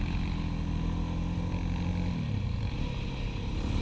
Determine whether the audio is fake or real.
real